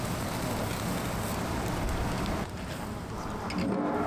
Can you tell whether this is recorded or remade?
recorded